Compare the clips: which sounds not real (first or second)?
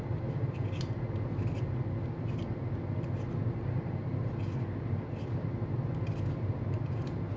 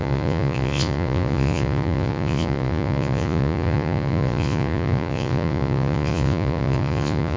second